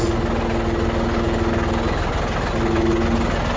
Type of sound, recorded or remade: recorded